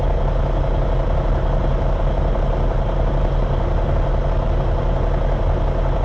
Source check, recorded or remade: recorded